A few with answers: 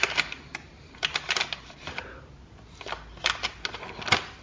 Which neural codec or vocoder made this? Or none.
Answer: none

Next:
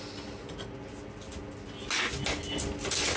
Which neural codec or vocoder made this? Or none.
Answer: none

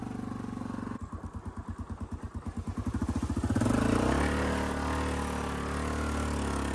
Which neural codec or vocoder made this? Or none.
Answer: none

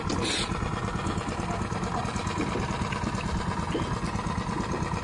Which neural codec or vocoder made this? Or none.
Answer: none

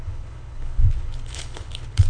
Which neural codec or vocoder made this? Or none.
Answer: codec, HILCodec